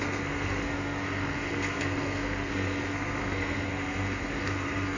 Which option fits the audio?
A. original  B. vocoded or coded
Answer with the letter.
B